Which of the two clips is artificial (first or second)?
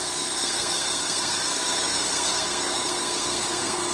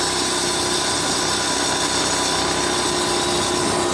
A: first